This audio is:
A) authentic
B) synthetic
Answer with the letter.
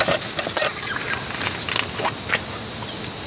A